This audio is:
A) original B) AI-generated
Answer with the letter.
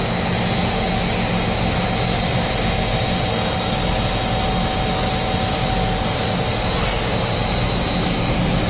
A